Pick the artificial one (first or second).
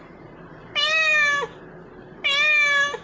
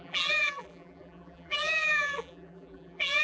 second